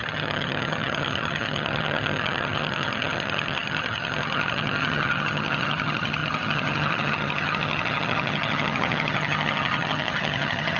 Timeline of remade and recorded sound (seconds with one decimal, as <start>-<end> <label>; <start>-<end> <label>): 0.0-10.8 remade